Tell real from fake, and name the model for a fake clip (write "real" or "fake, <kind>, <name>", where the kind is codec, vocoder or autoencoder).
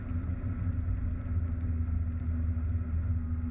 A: real